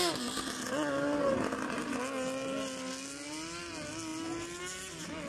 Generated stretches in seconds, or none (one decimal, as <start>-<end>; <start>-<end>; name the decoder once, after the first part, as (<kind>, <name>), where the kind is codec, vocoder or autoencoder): none